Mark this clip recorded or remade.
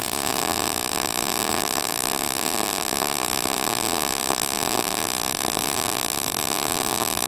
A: remade